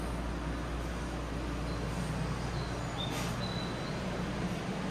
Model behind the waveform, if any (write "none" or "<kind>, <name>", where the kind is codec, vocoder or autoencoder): none